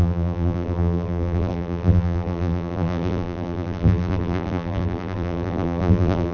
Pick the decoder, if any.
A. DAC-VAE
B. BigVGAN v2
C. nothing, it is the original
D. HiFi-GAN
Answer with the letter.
B